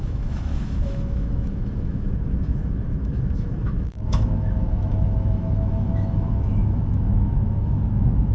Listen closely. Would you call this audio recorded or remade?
remade